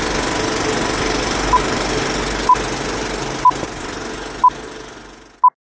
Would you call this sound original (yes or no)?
yes